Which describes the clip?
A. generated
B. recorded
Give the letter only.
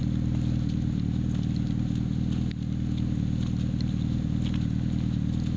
B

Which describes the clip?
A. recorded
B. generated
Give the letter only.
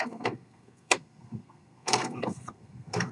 B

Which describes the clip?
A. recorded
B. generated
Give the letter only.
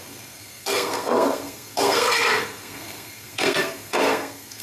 B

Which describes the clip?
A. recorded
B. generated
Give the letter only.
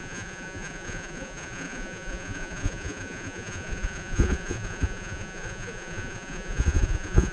B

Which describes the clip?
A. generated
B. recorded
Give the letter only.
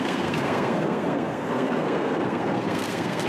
A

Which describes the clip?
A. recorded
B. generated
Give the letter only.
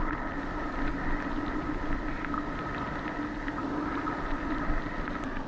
A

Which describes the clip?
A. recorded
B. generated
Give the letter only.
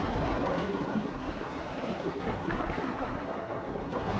B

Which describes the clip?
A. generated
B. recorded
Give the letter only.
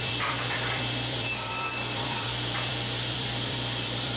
A